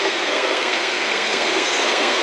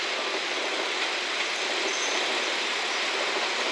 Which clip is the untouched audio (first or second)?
second